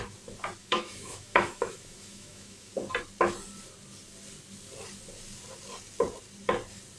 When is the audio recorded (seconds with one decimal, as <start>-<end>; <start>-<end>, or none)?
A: 0.0-0.6; 2.7-7.0